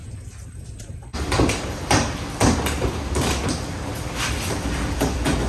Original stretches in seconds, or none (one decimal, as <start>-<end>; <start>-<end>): 0.0-0.6; 1.1-4.2